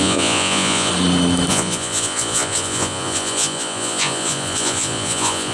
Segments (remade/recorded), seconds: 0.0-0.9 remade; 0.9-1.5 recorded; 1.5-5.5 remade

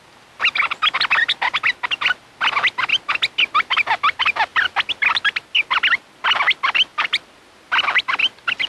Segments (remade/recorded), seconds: 0.0-8.7 recorded

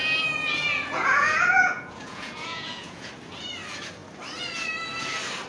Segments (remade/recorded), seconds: 0.0-0.5 recorded; 0.5-3.1 remade; 3.1-5.5 recorded

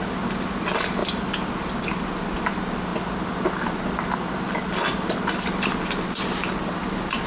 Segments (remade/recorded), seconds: 0.0-7.3 recorded

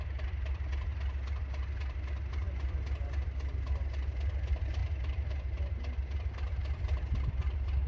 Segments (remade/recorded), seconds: 0.0-7.9 recorded

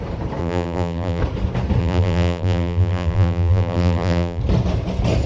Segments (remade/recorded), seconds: 0.0-0.4 recorded; 0.4-1.2 remade; 1.2-1.8 recorded; 1.8-4.4 remade; 4.4-5.3 recorded

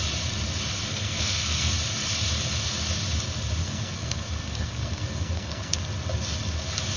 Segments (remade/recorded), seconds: 0.0-0.9 recorded; 0.9-1.7 remade; 1.7-3.6 recorded; 3.6-5.8 remade; 5.8-7.0 recorded

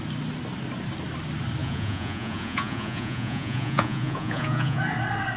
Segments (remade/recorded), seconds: 0.0-1.6 recorded; 1.6-4.8 remade; 4.8-5.4 recorded